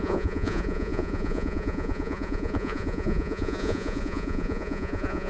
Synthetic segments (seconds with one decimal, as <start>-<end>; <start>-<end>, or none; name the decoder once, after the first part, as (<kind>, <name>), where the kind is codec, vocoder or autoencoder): 0.0-5.3 (vocoder, Vocos)